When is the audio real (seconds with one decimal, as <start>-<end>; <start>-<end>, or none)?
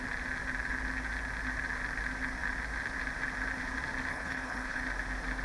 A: 0.0-4.1; 4.8-5.4